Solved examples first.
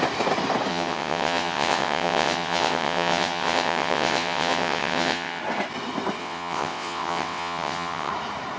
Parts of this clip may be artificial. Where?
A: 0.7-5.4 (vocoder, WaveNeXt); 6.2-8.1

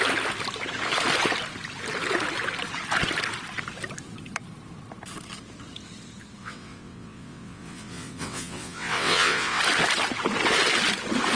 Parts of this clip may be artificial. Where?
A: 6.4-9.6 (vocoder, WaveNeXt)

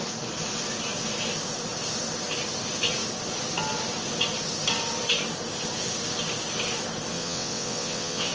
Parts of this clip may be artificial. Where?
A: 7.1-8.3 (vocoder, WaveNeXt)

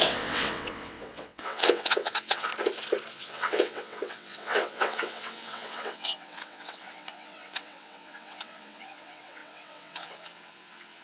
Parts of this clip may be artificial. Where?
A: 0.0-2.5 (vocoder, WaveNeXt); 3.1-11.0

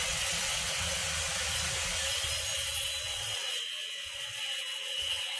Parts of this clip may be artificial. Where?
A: 0.0-1.0 (vocoder, WaveNeXt); 3.0-5.4